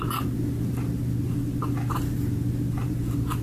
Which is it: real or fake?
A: real